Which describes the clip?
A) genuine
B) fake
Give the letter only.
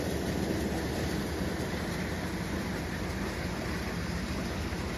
A